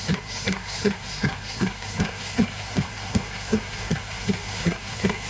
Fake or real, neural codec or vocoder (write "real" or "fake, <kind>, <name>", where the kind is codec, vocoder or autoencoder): fake, codec, SNAC